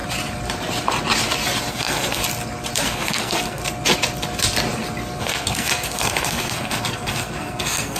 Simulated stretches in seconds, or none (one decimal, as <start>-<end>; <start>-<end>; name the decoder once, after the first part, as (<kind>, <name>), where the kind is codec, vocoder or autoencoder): 1.7-2.2 (codec, SNAC); 2.8-3.6; 5.2-8.0